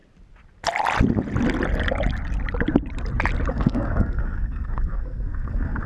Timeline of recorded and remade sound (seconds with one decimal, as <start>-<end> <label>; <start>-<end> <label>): 0.0-3.5 recorded; 3.5-5.9 remade